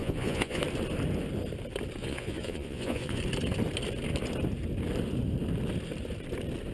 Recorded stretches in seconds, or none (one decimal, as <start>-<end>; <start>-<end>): 0.6-2.0; 3.2-6.7